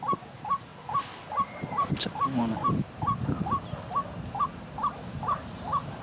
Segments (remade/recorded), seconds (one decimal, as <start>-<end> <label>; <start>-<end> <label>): 0.0-6.0 recorded